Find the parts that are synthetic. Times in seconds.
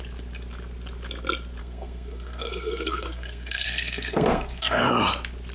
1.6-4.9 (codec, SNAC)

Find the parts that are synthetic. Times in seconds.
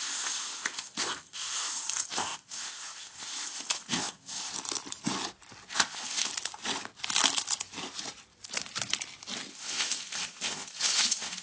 0.0-4.5 (codec, ZipCodec); 5.7-6.3; 9.5-11.4